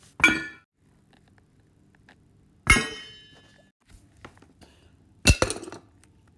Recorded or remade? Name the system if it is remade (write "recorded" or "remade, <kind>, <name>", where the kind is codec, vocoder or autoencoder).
recorded